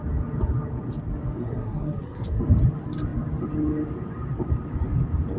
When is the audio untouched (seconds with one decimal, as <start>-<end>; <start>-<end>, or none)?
0.0-1.4; 2.4-5.4